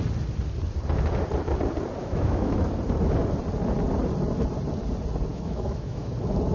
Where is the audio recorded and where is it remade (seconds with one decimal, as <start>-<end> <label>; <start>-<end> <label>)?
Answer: 0.0-2.0 recorded; 2.0-2.7 remade; 2.7-5.3 recorded; 5.3-6.1 remade; 6.1-6.5 recorded

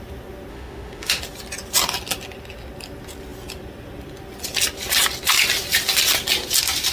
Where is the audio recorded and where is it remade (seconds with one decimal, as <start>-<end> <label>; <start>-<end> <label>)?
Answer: 0.0-0.5 recorded; 0.5-1.2 remade; 1.2-6.9 recorded

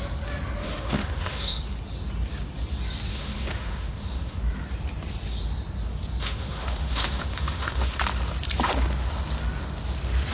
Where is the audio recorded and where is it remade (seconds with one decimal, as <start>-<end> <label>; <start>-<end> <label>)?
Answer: 0.0-0.6 recorded; 0.6-1.6 remade; 1.6-3.1 recorded; 3.1-4.4 remade; 4.4-6.2 recorded; 6.2-8.0 remade; 8.0-10.3 recorded

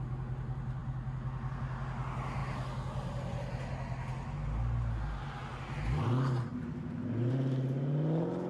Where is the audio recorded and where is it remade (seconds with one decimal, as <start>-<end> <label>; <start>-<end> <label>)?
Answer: 0.0-8.5 recorded

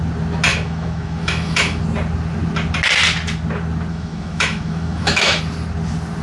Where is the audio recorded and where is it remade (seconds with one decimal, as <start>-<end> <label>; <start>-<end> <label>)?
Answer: 0.0-0.5 recorded; 0.5-1.8 remade; 1.8-3.9 recorded; 3.9-5.4 remade; 5.4-6.2 recorded

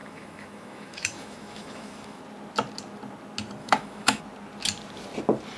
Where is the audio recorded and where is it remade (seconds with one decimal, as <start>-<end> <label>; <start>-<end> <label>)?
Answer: 0.0-2.2 remade; 2.2-3.6 recorded; 3.6-4.2 remade; 4.2-5.6 recorded